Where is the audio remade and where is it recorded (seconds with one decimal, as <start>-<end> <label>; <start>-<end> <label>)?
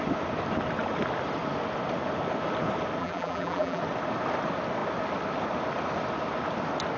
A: 0.0-3.0 recorded; 3.0-3.8 remade; 3.8-7.0 recorded